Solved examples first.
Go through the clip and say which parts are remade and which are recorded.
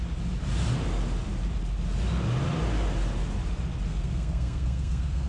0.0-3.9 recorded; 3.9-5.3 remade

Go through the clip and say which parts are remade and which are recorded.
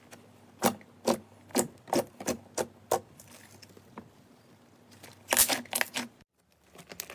0.0-7.1 recorded